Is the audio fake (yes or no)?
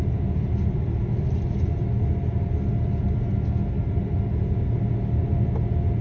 no